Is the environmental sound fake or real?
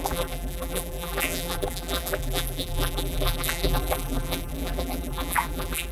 fake